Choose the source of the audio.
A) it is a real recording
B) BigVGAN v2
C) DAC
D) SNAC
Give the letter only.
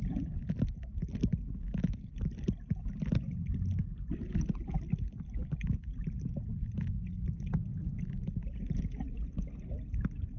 A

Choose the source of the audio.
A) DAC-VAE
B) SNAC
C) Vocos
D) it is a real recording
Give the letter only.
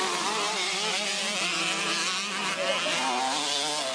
D